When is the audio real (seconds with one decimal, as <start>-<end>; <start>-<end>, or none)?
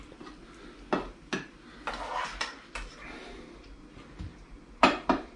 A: 0.0-5.4